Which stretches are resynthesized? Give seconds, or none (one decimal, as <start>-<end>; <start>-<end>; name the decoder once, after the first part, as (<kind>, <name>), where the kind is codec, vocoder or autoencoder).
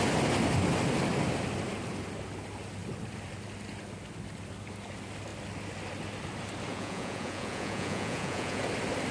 6.7-8.6 (vocoder, Vocos)